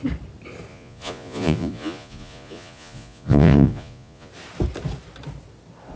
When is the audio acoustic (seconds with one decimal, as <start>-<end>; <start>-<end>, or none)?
0.0-0.7; 4.3-6.0